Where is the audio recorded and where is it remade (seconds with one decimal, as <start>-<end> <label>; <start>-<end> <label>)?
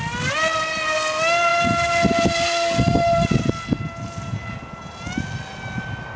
0.0-6.2 recorded